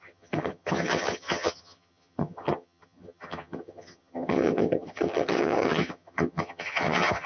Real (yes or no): no